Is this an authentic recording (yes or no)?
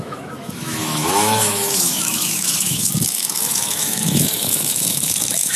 no